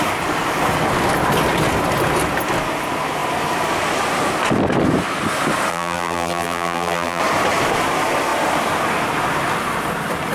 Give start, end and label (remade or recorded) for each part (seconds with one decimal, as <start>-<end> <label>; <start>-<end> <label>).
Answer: 0.0-5.7 recorded; 5.7-7.2 remade; 7.2-10.3 recorded